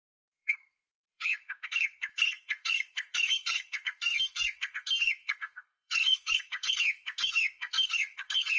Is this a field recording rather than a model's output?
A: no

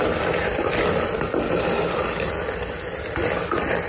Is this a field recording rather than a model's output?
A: yes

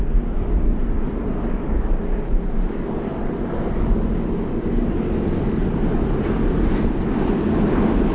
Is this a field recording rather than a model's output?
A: yes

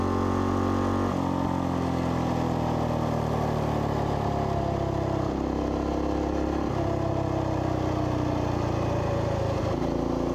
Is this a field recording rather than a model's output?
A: yes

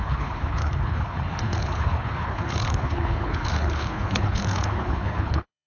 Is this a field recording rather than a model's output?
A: no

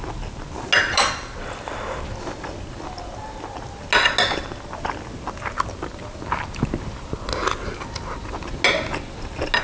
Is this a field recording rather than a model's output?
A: yes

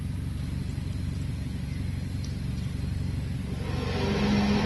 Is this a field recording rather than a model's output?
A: yes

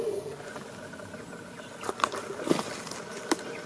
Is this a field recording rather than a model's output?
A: yes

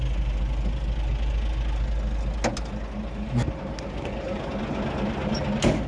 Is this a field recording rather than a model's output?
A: yes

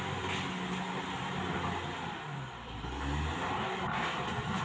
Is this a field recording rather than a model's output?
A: yes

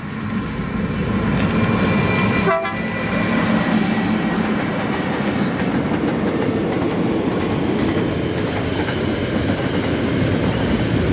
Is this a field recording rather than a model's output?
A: yes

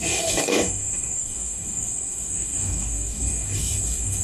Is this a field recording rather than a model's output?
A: no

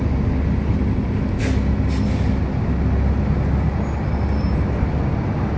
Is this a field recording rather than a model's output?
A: yes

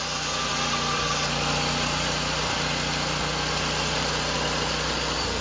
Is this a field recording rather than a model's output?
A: yes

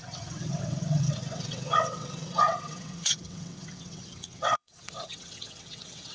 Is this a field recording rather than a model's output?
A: no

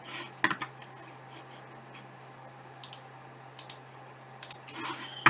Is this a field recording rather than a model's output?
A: yes